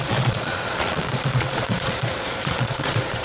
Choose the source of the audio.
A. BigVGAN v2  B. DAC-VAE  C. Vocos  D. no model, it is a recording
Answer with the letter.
C